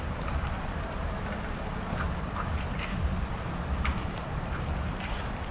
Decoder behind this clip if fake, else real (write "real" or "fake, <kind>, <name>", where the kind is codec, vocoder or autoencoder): fake, vocoder, BigVGAN v2